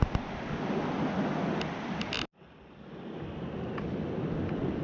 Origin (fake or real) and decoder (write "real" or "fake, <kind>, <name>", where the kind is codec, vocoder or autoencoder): real